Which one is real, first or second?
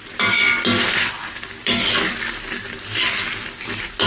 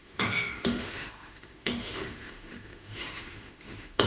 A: first